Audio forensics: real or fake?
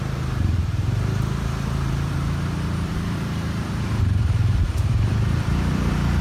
fake